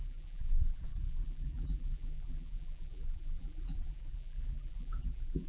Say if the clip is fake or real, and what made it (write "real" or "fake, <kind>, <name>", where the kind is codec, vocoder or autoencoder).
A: fake, vocoder, BigVGAN v2